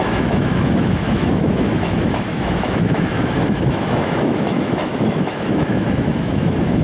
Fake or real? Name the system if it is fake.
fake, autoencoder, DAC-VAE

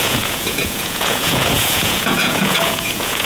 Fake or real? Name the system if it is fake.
fake, vocoder, Vocos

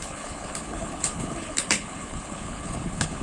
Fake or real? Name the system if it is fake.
fake, codec, HILCodec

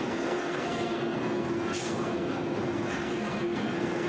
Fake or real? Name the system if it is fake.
fake, codec, SNAC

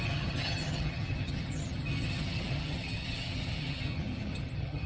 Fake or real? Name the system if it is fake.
fake, vocoder, HiFi-GAN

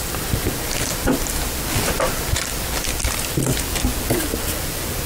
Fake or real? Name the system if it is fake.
real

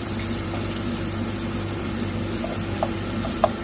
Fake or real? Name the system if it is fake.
fake, vocoder, BigVGAN v2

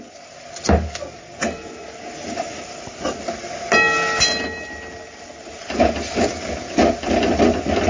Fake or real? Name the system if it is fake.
real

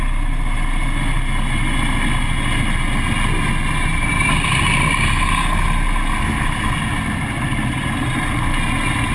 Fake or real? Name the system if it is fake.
real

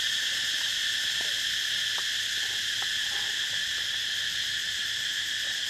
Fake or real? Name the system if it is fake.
real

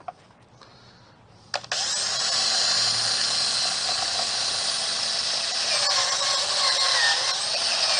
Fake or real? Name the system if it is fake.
real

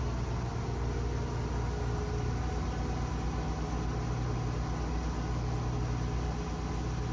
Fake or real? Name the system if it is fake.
real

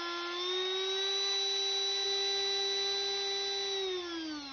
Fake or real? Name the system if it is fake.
real